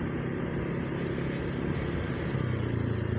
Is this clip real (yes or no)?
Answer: yes